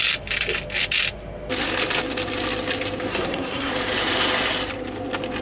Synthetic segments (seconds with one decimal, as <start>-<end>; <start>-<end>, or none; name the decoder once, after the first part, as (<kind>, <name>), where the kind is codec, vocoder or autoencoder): 3.1-3.7 (codec, SNAC)